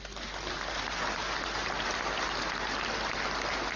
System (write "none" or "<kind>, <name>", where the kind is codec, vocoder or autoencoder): none